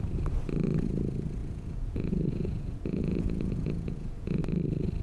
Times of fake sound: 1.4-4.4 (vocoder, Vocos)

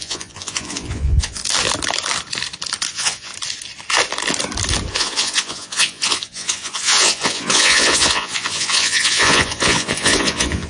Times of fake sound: 0.0-1.4 (vocoder, Vocos); 2.9-3.3; 4.9-10.7

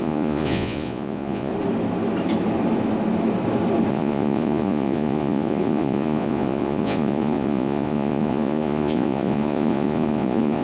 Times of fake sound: 0.0-1.5 (vocoder, Vocos); 3.9-10.6

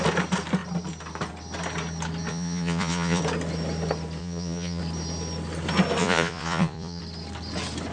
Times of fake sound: 2.3-3.2 (vocoder, Vocos); 4.2-4.8; 6.0-7.0